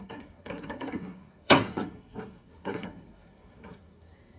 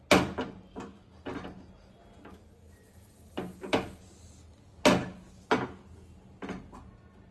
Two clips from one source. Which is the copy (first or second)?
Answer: first